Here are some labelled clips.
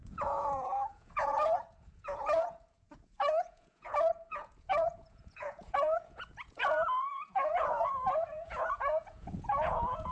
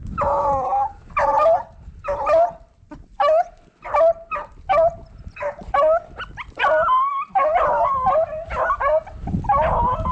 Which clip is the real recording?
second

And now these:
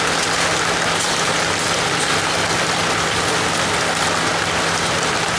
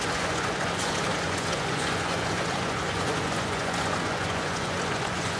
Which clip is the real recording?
first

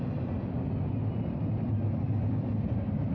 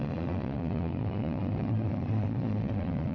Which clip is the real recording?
first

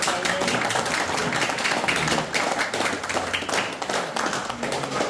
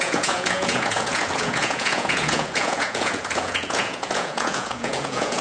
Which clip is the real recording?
first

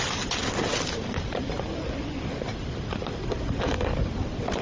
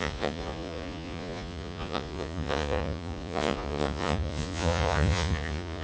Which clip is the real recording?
first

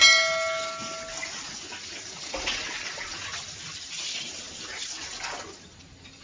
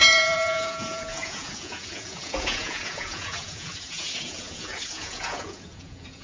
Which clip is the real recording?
first